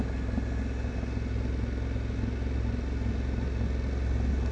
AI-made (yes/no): no